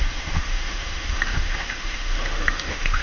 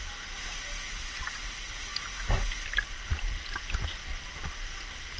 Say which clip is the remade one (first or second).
first